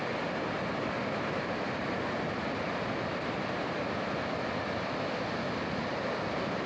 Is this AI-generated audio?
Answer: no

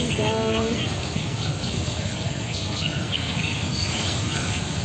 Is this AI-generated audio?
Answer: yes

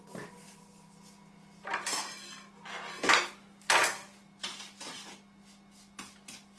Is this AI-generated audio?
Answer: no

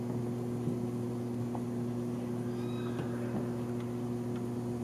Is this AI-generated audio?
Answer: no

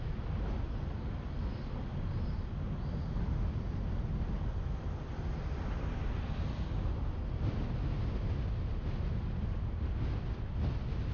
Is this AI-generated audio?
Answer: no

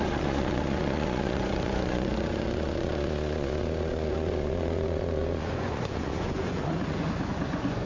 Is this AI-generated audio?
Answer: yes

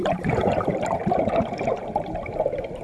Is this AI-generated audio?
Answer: yes